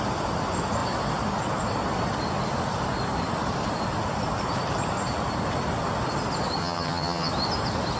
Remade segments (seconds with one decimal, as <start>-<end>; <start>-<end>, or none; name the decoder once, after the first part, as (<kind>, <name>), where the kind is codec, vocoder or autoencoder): 6.6-7.3 (vocoder, HiFi-GAN)